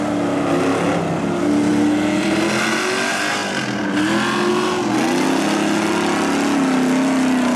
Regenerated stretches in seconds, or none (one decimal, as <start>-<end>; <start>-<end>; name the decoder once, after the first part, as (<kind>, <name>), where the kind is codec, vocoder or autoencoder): none